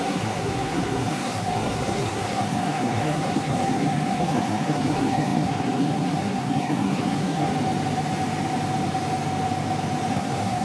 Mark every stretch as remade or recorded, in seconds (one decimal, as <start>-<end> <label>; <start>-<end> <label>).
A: 0.0-7.5 remade; 7.5-10.1 recorded; 10.1-10.6 remade